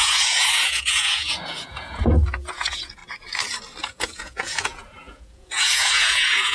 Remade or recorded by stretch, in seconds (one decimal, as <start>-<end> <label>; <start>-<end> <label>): 0.0-3.0 remade; 3.0-3.8 recorded; 3.8-6.5 remade